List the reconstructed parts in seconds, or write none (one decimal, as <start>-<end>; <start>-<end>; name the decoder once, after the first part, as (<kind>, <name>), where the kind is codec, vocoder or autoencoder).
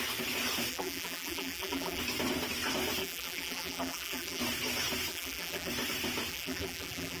0.7-2.0 (vocoder, BigVGAN v2); 3.0-4.4; 5.1-5.7; 6.3-7.2